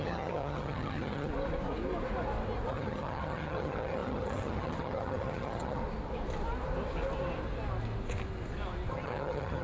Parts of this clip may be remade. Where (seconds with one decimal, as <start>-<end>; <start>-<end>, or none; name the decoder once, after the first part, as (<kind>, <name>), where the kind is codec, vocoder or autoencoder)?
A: 0.0-1.3 (vocoder, HiFi-GAN); 2.7-5.8; 8.9-9.6

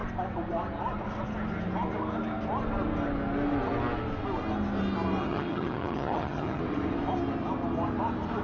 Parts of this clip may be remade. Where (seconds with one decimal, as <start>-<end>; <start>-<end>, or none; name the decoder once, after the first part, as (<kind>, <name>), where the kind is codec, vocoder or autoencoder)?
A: 5.2-6.6 (vocoder, HiFi-GAN)

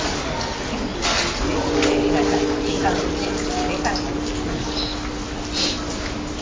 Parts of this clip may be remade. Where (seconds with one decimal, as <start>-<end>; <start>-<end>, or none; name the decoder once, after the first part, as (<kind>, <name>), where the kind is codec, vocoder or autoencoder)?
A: none

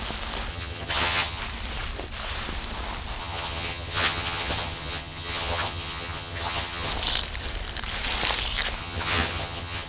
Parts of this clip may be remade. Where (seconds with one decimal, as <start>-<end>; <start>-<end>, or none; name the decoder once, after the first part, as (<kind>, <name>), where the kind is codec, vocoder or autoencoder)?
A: 0.5-1.4 (vocoder, HiFi-GAN); 3.2-6.9; 8.8-9.9